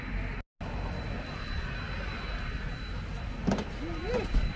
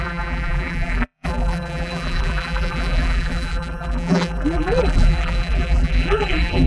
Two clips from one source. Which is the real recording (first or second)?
first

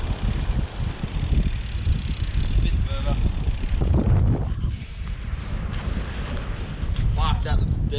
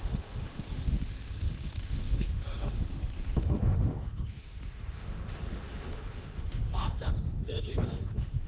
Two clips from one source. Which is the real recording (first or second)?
first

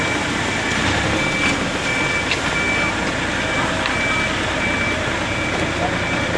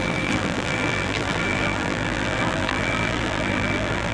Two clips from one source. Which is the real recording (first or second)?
first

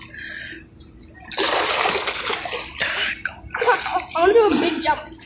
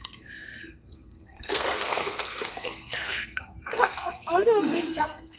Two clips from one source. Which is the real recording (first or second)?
first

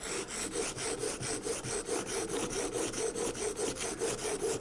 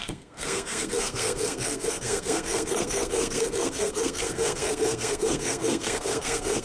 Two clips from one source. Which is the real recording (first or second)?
first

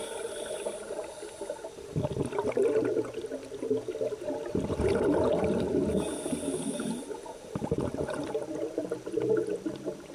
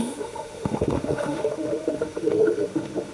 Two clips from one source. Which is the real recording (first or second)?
first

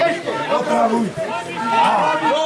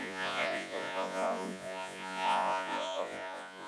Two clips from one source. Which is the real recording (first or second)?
first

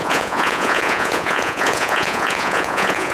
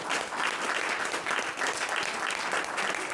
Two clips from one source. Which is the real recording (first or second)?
second